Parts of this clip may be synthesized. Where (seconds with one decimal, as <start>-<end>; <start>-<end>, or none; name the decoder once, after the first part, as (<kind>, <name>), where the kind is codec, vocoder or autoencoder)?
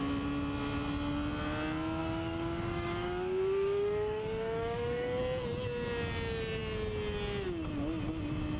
2.0-5.2 (codec, DAC)